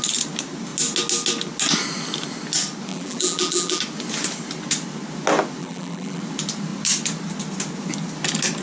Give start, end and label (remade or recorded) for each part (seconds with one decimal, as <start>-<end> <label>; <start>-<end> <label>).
0.0-2.9 recorded; 2.9-3.8 remade; 3.8-5.6 recorded; 5.6-6.2 remade; 6.2-8.6 recorded